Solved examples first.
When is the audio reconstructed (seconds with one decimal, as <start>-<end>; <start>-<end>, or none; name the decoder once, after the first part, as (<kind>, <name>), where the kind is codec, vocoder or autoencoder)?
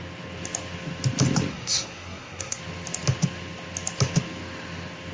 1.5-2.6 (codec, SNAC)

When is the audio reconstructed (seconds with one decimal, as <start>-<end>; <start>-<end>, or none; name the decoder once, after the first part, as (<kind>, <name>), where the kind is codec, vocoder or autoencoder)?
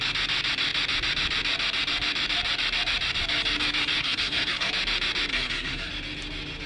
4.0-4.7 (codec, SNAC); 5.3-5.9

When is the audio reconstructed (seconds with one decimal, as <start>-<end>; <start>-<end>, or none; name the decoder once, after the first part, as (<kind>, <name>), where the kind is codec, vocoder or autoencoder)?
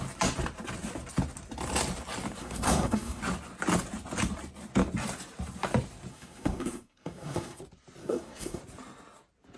2.4-3.2 (codec, SNAC); 6.1-7.6; 8.0-8.6